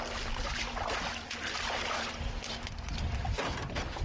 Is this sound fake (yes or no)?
no